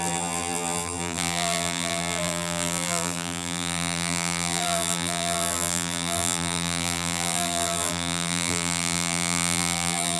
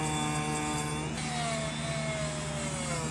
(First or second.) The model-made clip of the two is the first